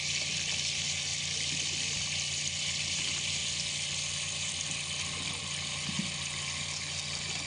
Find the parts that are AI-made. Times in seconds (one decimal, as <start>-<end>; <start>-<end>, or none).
1.1-3.0